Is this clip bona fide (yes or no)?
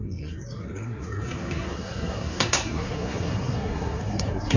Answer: no